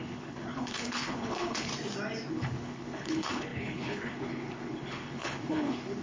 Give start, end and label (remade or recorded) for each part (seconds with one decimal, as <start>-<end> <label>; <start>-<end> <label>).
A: 0.0-1.7 remade; 1.7-2.3 recorded; 2.3-6.0 remade